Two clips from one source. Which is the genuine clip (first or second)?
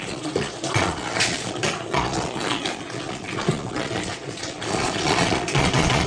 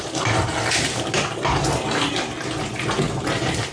second